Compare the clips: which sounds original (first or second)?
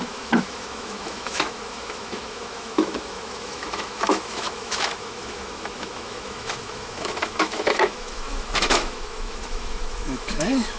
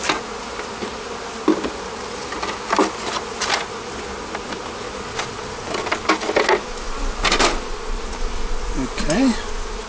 second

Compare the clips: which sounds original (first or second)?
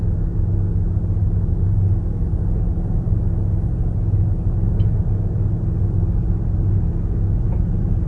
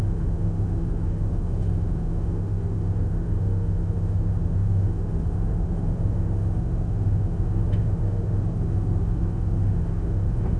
first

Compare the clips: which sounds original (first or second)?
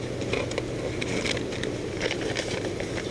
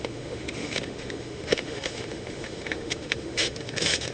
first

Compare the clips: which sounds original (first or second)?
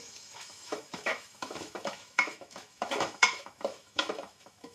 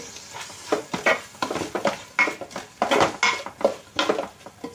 second